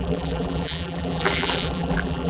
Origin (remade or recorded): remade